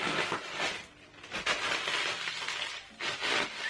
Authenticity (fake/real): real